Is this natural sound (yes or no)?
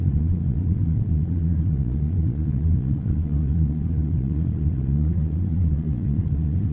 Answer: no